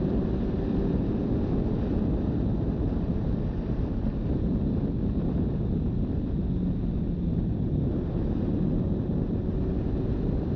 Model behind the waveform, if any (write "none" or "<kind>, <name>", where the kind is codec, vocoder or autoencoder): none